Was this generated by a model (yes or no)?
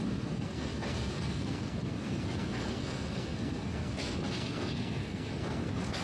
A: yes